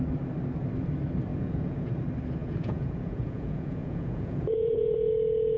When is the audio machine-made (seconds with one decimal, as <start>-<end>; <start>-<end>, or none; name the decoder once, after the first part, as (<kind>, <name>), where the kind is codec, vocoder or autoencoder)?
1.3-1.9 (vocoder, Vocos); 2.4-5.1